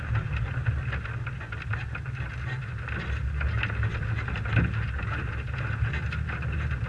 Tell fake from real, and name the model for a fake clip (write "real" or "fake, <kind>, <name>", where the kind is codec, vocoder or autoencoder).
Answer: real